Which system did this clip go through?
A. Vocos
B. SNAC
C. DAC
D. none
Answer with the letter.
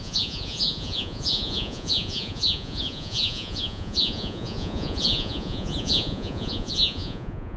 A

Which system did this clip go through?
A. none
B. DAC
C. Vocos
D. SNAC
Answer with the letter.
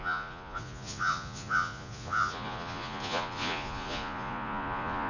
C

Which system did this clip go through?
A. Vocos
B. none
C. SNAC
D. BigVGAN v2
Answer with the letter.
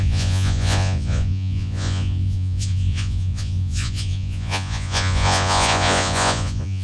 A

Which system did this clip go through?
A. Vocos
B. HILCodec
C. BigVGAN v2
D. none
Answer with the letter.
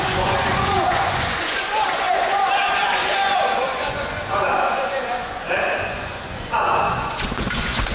A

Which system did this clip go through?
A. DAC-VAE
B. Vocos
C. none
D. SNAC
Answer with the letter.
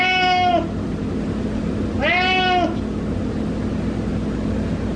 C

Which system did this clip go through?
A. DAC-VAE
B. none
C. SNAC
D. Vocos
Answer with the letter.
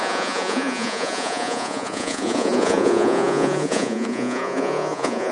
D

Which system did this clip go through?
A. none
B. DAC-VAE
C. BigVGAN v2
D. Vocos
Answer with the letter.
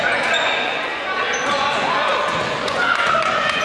D